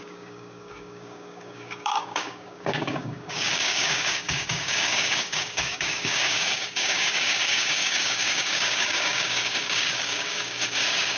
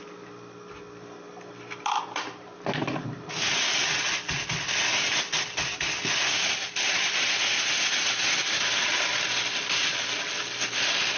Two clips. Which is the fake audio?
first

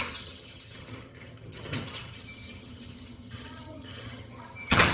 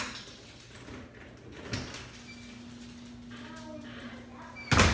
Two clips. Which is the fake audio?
first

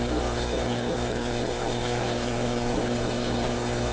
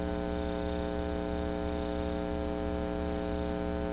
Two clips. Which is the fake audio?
first